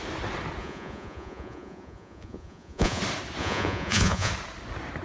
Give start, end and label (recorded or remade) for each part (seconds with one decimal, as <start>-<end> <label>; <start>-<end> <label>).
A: 0.0-0.6 recorded; 0.6-3.0 remade; 3.0-3.4 recorded; 3.4-4.3 remade; 4.3-5.0 recorded